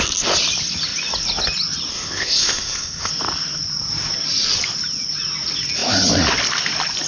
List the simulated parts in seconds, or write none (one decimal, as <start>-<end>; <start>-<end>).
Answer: 1.9-3.1